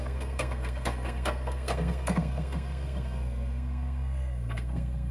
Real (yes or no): no